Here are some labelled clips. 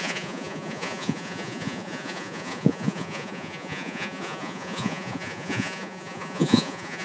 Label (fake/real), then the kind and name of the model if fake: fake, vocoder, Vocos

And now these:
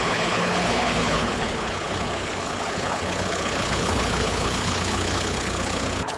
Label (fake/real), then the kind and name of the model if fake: fake, codec, HILCodec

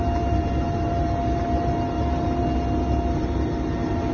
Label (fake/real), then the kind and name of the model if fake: real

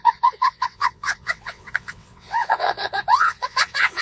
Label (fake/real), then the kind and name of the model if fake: fake, vocoder, WaveNeXt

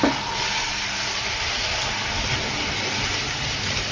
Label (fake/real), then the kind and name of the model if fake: real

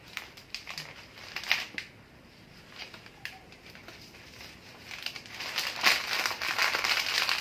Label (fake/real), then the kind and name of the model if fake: real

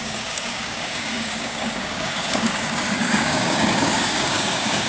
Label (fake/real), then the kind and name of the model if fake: fake, codec, DAC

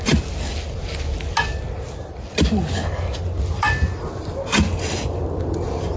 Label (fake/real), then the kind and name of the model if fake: real